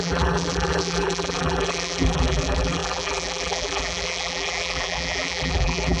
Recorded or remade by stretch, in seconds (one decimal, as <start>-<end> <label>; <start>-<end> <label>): 0.0-6.0 remade